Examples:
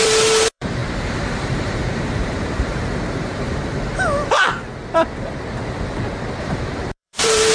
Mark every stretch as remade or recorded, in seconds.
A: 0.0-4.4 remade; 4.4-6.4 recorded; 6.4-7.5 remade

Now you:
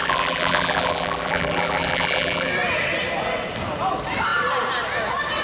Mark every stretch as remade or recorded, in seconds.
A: 0.0-2.5 remade; 2.5-5.4 recorded

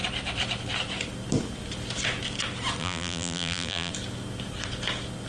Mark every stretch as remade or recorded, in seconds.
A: 0.0-2.8 recorded; 2.8-3.9 remade; 3.9-5.3 recorded

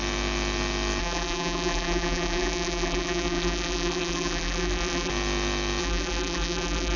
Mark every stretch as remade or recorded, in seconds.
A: 0.0-1.0 recorded; 1.0-5.1 remade; 5.1-5.8 recorded; 5.8-7.0 remade